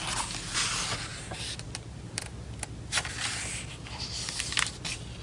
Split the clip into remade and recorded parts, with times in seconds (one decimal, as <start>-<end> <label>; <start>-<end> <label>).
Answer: 0.0-5.2 recorded